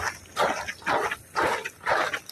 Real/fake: real